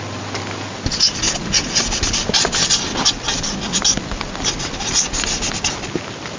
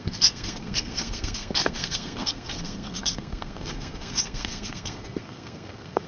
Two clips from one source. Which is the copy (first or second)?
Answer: second